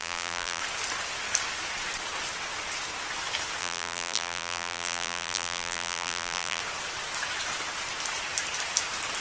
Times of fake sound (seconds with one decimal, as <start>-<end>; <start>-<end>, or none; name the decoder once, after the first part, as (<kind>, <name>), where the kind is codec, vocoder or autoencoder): 0.0-0.6 (vocoder, BigVGAN v2); 3.6-6.6